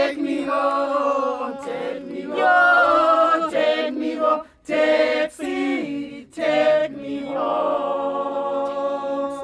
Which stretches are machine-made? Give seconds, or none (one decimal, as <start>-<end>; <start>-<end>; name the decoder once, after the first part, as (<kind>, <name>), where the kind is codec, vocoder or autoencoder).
5.5-6.1 (autoencoder, DAC-VAE)